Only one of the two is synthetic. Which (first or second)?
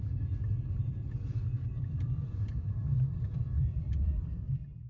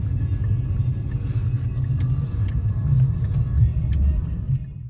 first